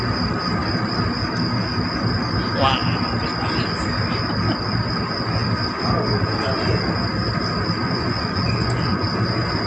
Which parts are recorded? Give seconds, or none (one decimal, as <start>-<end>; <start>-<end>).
0.0-7.8; 9.0-9.7